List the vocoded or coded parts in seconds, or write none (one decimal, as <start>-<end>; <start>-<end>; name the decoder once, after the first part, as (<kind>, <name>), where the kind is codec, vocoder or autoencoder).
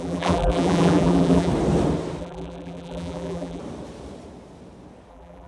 0.0-1.5 (vocoder, BigVGAN v2); 2.2-3.6; 5.1-5.5